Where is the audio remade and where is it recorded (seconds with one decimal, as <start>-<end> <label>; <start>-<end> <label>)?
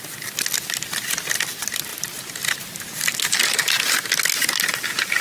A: 0.0-5.2 recorded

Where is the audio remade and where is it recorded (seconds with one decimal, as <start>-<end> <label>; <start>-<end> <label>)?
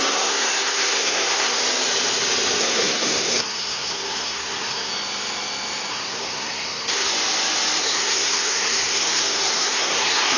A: 0.0-1.6 remade; 1.6-2.6 recorded; 2.6-4.9 remade; 4.9-5.9 recorded; 5.9-7.1 remade; 7.1-7.8 recorded; 7.8-10.4 remade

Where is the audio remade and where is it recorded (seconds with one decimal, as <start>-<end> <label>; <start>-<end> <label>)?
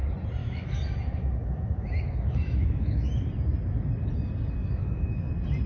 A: 0.0-0.4 recorded; 0.4-3.1 remade; 3.1-4.6 recorded; 4.6-5.3 remade; 5.3-5.7 recorded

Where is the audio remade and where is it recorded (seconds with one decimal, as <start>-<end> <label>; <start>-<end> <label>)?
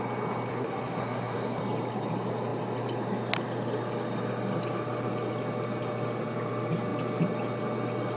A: 0.0-0.5 recorded; 0.5-1.6 remade; 1.6-8.2 recorded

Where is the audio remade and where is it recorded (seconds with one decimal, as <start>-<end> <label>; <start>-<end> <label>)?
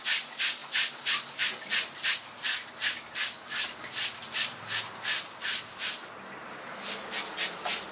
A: 0.0-7.9 recorded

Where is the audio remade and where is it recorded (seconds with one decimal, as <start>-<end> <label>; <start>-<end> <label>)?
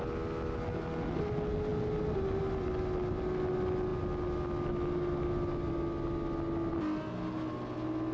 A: 0.0-8.1 recorded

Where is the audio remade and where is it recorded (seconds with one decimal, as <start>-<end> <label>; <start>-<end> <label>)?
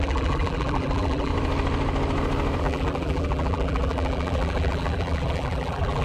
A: 0.0-1.3 remade; 1.3-2.6 recorded; 2.6-6.0 remade